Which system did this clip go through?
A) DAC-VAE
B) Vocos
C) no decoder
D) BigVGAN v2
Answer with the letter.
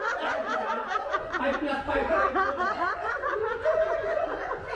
B